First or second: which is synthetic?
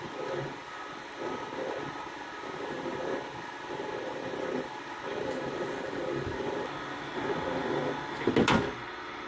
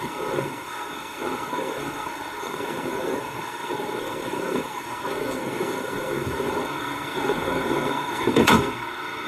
second